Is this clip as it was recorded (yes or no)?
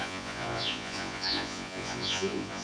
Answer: no